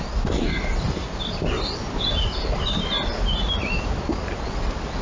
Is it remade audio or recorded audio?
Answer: recorded